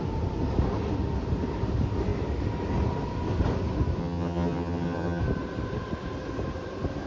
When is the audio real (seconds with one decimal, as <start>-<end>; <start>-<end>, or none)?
0.0-4.0; 5.2-7.1